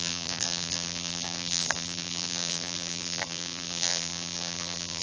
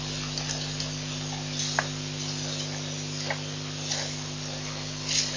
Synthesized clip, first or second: first